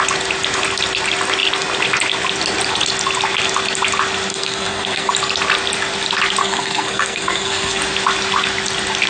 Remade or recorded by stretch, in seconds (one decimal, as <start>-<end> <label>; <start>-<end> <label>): 0.0-4.3 recorded; 4.3-5.1 remade; 5.1-6.4 recorded; 6.4-7.8 remade; 7.8-9.1 recorded